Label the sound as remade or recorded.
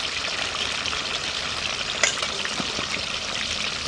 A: remade